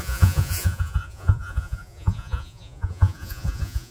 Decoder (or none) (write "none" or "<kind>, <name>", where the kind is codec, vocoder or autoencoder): vocoder, Vocos